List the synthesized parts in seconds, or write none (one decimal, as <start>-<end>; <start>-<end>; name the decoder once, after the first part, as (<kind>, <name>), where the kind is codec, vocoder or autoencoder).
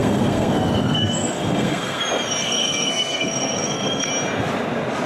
0.0-2.0 (codec, SNAC); 2.4-4.1